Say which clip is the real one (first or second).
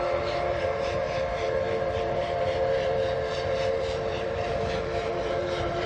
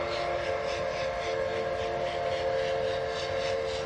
second